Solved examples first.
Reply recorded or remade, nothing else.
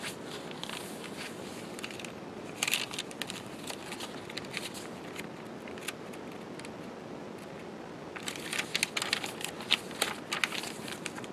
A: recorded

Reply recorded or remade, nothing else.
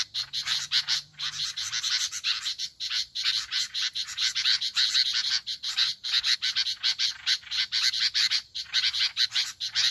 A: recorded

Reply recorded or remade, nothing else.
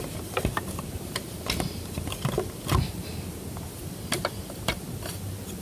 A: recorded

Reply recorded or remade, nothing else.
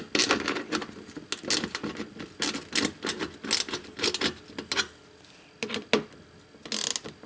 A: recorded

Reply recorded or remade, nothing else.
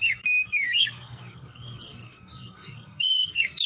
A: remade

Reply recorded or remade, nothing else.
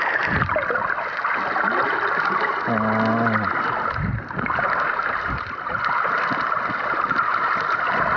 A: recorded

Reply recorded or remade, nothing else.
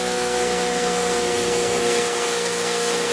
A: remade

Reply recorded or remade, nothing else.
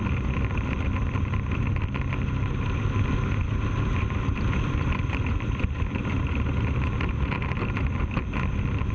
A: recorded